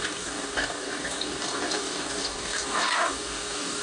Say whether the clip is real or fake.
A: fake